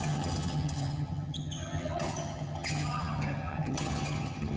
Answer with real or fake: fake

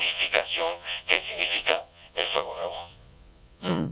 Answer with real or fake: fake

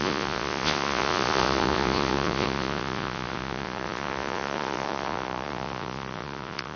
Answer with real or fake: fake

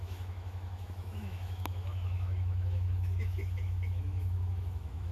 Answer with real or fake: fake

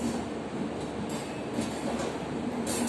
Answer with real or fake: real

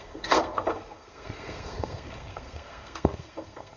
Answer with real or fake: fake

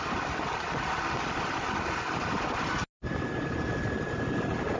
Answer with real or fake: real